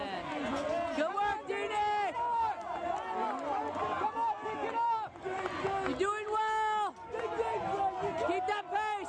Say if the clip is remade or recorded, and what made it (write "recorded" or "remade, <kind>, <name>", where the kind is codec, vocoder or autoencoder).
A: recorded